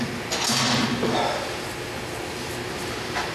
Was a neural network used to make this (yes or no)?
no